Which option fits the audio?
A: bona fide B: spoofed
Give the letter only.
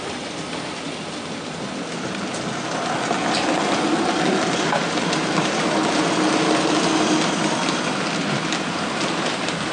A